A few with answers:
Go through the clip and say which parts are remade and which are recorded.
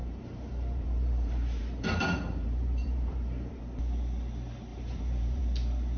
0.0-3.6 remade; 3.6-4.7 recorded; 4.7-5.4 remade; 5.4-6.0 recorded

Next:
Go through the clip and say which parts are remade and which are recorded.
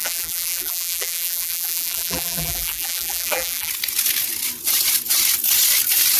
0.0-3.7 remade; 3.7-6.2 recorded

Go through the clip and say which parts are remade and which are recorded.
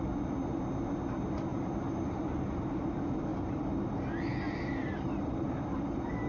0.0-1.5 recorded; 1.5-2.9 remade; 2.9-3.3 recorded; 3.3-3.9 remade; 3.9-4.8 recorded; 4.8-6.3 remade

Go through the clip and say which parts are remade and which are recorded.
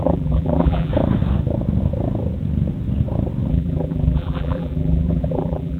0.0-0.9 remade; 0.9-3.5 recorded; 3.5-5.8 remade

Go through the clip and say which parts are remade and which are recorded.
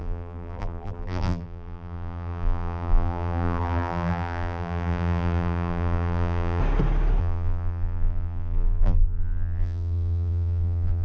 0.0-6.6 remade; 6.6-7.2 recorded; 7.2-11.0 remade